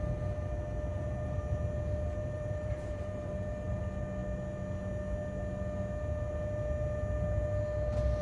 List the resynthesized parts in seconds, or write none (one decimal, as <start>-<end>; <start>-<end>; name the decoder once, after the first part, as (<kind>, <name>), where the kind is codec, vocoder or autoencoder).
0.9-1.4 (vocoder, BigVGAN v2); 2.2-3.8